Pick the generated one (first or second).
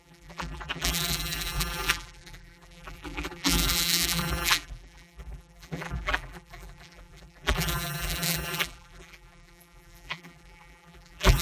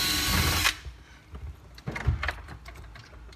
first